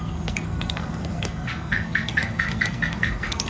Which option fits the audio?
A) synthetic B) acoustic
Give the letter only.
A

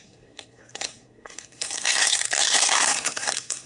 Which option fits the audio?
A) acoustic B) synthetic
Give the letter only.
B